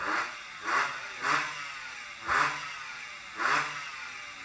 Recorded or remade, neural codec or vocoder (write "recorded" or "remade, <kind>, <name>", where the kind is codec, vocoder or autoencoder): recorded